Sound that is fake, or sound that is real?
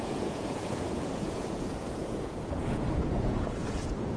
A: fake